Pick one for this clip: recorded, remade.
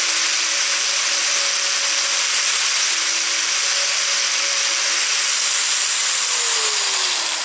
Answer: recorded